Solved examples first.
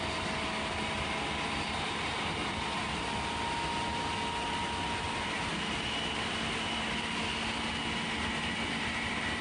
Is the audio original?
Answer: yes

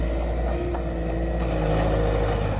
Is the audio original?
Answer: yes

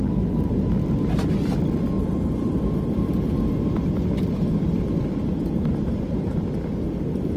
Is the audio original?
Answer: yes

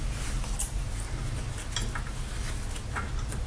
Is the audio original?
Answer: yes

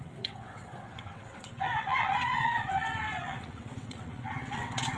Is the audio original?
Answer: no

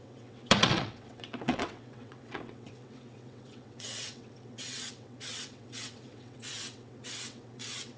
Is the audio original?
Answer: no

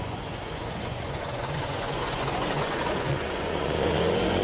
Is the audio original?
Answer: no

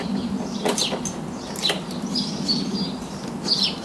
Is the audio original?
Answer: yes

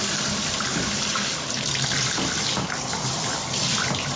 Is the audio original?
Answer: yes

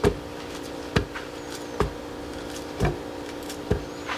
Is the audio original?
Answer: yes